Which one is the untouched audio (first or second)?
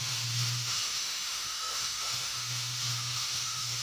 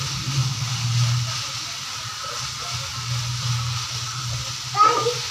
second